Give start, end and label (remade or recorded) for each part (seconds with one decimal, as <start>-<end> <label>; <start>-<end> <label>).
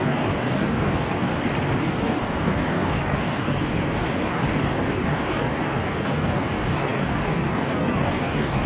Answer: 0.0-1.3 remade; 1.3-1.8 recorded; 1.8-8.7 remade